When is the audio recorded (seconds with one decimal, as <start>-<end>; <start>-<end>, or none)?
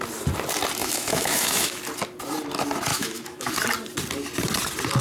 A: 0.0-0.8; 1.8-2.9; 3.5-5.0